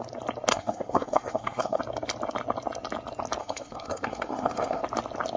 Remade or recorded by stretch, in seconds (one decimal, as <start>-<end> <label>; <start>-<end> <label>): 0.0-0.5 recorded; 0.5-1.8 remade; 1.8-3.4 recorded; 3.4-4.8 remade; 4.8-5.4 recorded